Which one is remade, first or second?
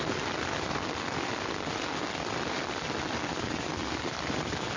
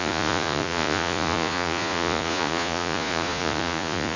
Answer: second